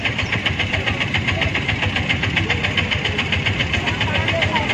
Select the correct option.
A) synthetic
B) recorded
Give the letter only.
A